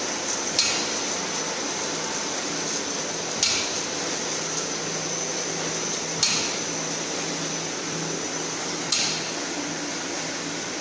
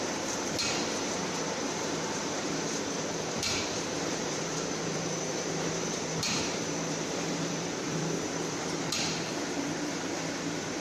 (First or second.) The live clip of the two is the first